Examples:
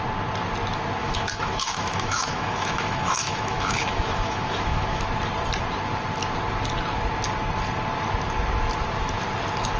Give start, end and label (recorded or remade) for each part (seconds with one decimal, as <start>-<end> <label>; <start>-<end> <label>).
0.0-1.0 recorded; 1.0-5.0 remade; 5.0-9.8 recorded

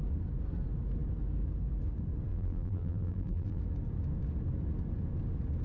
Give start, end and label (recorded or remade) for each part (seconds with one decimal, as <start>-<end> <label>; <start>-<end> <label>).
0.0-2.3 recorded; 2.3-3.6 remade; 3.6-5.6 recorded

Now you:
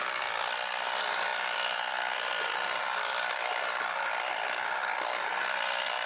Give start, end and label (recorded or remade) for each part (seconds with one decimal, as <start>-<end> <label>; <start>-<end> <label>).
0.0-1.3 recorded; 1.3-3.5 remade; 3.5-6.1 recorded

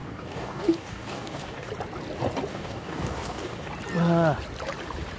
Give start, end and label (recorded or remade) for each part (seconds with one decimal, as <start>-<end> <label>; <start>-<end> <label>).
0.0-1.7 remade; 1.7-2.5 recorded; 2.5-3.7 remade; 3.7-5.2 recorded